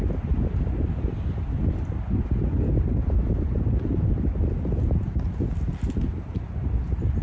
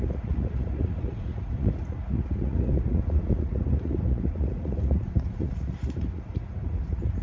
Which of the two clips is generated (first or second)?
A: second